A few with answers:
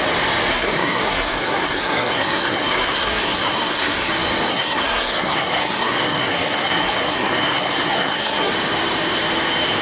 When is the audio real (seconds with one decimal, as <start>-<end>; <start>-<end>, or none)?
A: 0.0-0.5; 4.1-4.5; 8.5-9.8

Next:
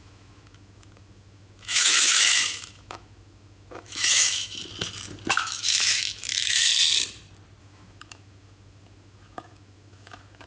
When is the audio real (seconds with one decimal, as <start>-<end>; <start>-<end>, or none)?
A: 4.7-5.3; 6.7-7.6

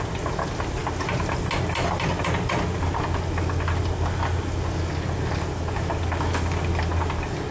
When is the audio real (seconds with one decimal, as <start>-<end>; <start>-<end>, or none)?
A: 0.0-7.5

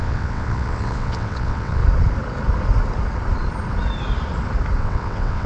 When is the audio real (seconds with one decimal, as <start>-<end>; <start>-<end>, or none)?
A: 1.8-4.8

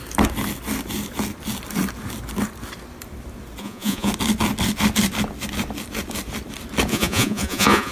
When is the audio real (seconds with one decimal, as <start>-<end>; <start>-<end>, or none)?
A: 0.0-3.6; 4.1-6.9

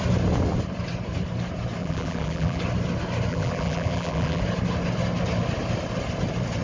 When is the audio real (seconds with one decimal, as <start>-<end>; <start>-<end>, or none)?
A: 0.0-1.8; 2.6-3.3; 4.4-6.6

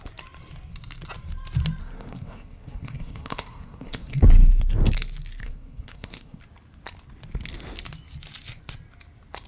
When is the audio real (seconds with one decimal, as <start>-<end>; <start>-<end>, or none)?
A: 0.0-1.8; 4.5-5.4; 6.4-9.5

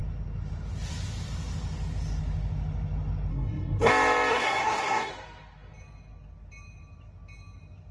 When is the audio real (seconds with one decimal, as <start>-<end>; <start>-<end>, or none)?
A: 0.0-3.3; 3.9-4.3; 5.1-7.9